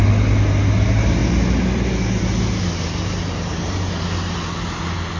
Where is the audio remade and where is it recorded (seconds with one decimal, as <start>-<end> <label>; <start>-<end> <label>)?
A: 0.0-5.2 recorded